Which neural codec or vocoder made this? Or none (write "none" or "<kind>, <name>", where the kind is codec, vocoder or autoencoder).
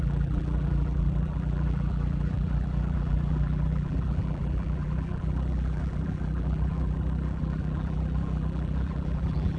vocoder, BigVGAN v2